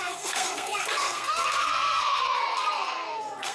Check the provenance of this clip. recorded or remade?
remade